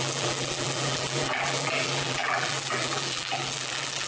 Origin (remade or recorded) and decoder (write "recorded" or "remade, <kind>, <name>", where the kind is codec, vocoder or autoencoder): remade, vocoder, BigVGAN v2